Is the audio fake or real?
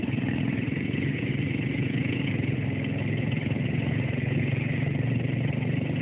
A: real